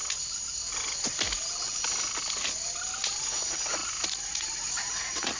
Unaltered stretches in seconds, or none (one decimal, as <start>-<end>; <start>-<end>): 0.0-3.2